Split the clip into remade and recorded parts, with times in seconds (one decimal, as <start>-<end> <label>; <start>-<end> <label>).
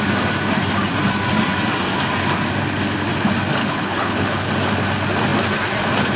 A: 0.0-3.6 recorded; 3.6-4.5 remade; 4.5-6.2 recorded